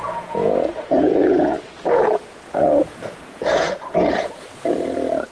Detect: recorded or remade remade